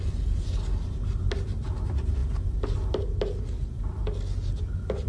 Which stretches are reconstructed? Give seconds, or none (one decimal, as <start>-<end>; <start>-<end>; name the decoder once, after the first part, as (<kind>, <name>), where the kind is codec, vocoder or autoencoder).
none